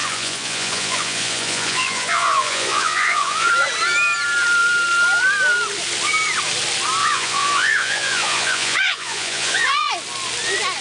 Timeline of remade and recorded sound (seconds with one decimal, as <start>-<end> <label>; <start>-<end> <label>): 0.0-3.5 remade; 3.5-7.0 recorded; 7.0-9.9 remade; 9.9-10.8 recorded